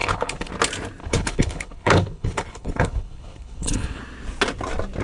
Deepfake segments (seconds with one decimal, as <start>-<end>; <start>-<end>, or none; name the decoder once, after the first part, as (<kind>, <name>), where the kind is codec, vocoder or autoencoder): 0.0-0.5 (codec, HILCodec); 1.0-4.0